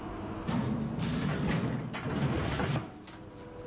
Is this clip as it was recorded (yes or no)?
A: yes